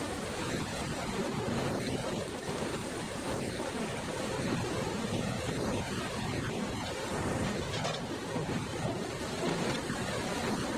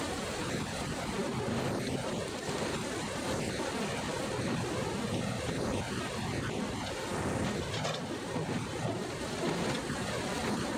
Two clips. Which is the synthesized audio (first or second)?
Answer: first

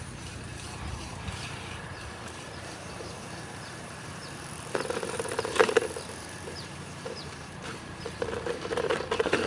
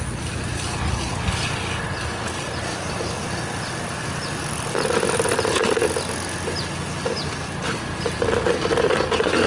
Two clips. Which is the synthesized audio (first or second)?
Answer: first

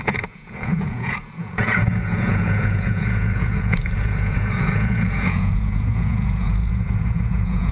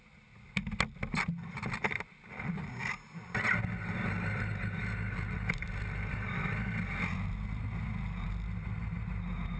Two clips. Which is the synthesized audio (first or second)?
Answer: first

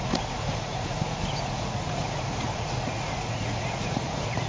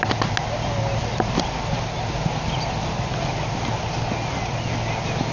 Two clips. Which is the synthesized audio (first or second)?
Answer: first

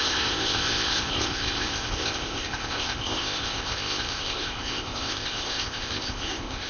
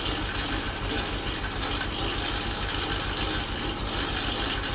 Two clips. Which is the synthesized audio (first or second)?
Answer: first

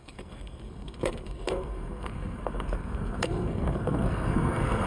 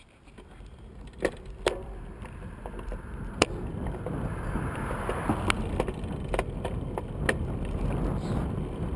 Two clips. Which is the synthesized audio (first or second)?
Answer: first